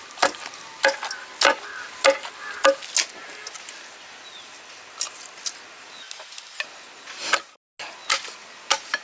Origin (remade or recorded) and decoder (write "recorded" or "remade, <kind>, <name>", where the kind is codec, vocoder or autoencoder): recorded